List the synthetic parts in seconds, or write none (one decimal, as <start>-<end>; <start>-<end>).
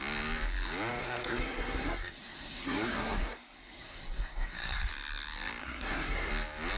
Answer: 1.0-4.9; 5.6-6.3